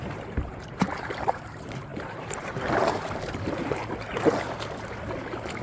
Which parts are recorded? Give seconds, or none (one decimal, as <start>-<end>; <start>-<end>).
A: 3.8-5.6